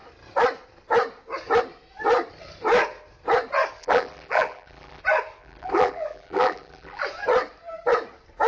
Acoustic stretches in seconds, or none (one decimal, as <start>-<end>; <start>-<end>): 0.0-3.8; 5.0-5.4; 7.0-8.5